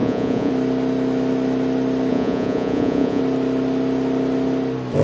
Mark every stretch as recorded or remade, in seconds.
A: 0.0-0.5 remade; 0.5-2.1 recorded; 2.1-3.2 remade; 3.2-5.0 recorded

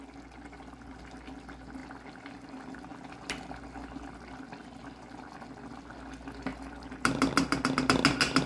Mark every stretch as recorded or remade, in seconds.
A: 0.0-8.5 recorded

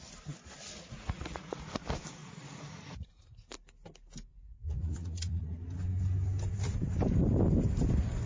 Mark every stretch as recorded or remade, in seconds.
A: 0.0-0.7 recorded; 0.7-1.7 remade; 1.7-2.2 recorded; 2.2-3.2 remade; 3.2-4.3 recorded; 4.3-5.4 remade; 5.4-8.3 recorded

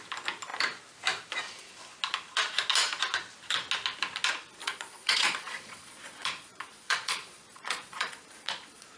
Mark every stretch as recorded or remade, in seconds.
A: 0.0-4.6 recorded; 4.6-9.0 remade